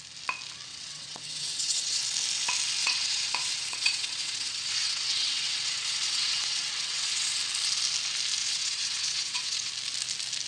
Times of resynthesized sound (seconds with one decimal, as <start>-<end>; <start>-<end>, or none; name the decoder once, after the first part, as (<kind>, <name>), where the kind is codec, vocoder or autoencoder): 0.7-2.0 (vocoder, WaveNeXt); 2.8-7.4; 8.4-9.7

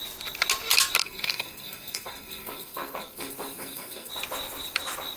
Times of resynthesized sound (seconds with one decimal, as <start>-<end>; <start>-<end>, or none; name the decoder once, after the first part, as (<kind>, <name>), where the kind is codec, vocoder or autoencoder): 1.0-4.1 (codec, SNAC)

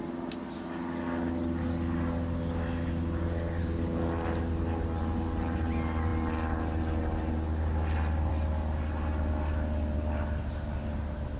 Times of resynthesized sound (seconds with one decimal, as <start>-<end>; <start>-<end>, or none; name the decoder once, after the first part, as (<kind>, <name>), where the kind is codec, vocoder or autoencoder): none

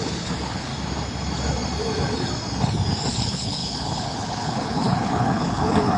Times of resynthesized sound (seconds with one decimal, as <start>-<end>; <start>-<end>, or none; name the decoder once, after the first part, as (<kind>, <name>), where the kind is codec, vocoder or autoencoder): 0.0-0.7 (codec, HILCodec); 3.1-6.0

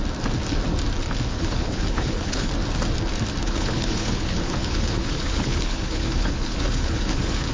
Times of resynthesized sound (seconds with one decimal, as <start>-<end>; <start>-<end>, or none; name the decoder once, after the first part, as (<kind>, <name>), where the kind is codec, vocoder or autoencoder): 1.3-2.5 (codec, HILCodec); 3.4-7.5

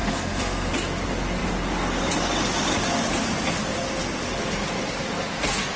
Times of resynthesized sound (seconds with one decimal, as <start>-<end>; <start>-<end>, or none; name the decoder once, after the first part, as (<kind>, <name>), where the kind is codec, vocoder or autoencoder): 0.0-0.7 (codec, SNAC)